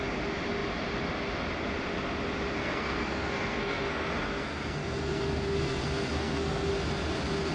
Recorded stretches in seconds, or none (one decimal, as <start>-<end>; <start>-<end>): 0.0-2.6; 6.7-7.5